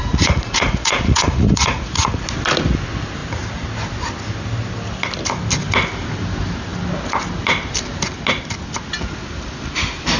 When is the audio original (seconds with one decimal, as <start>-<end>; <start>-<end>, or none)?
2.2-10.2